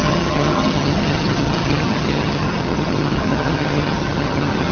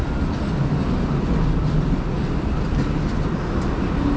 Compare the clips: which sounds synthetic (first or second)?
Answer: first